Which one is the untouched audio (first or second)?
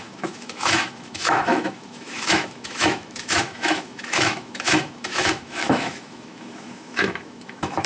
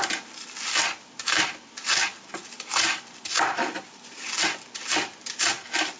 second